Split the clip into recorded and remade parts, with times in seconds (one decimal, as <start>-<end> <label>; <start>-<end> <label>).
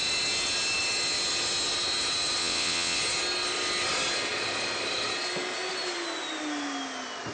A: 0.0-2.4 recorded; 2.4-3.0 remade; 3.0-7.3 recorded